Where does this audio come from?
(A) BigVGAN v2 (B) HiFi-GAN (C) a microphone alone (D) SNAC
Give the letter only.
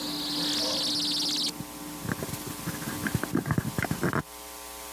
C